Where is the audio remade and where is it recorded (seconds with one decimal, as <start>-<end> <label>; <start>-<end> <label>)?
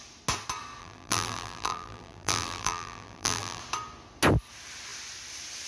0.0-0.8 recorded; 0.8-3.6 remade; 3.6-5.7 recorded